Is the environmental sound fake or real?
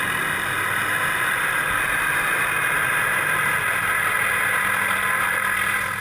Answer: real